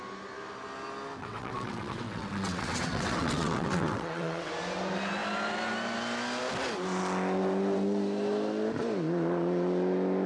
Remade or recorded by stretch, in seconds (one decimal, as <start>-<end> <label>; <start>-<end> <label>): 0.0-1.2 recorded; 1.2-4.5 remade; 4.5-10.3 recorded